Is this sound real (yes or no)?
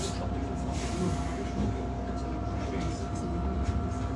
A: yes